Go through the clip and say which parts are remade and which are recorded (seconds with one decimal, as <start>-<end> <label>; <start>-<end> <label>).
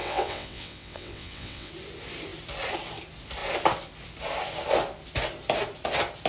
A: 0.0-1.7 remade; 1.7-6.3 recorded